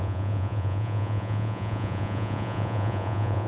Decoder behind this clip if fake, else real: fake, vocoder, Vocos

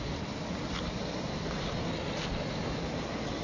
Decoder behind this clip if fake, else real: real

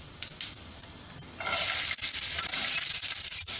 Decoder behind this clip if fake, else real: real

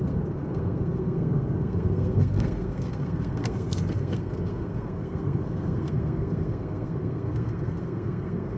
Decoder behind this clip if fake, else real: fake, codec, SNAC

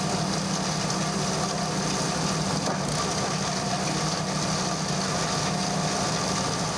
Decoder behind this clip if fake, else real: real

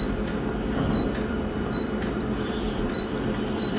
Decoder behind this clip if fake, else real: fake, vocoder, BigVGAN v2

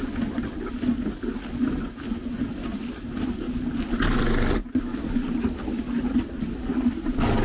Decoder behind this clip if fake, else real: real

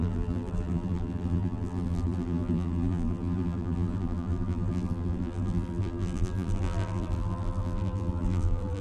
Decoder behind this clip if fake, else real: fake, vocoder, BigVGAN v2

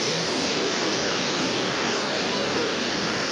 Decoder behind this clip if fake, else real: fake, codec, DAC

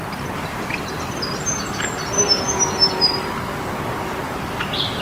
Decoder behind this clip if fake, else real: real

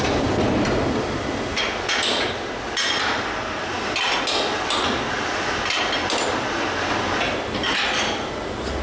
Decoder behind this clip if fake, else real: real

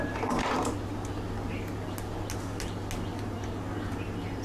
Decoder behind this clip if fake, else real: real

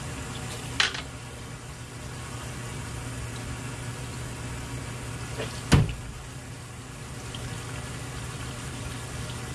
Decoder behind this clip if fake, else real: real